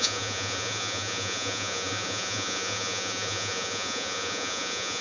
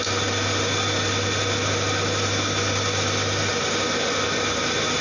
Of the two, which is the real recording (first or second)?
second